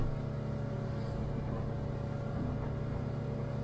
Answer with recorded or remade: recorded